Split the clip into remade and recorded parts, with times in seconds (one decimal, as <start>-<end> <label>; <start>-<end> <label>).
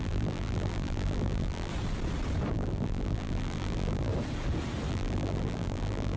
0.0-1.7 remade; 1.7-2.5 recorded; 2.5-4.1 remade; 4.1-4.9 recorded; 4.9-6.2 remade